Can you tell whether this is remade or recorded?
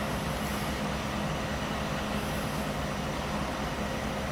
recorded